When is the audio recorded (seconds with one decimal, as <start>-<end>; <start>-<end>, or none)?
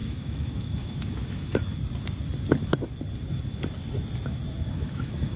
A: 1.5-4.7